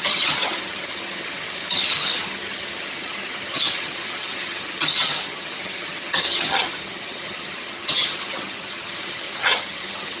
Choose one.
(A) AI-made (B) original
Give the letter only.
A